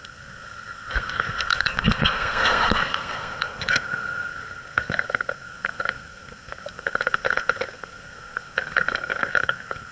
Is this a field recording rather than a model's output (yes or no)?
no